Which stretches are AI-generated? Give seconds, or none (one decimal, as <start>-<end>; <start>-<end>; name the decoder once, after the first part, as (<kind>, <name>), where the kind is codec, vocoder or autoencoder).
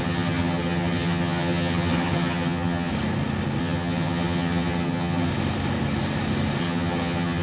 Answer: 0.0-2.9 (vocoder, HiFi-GAN); 3.6-5.3; 6.6-7.4